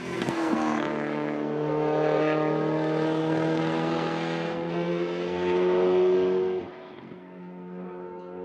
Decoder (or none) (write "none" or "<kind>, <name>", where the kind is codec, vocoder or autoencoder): codec, SNAC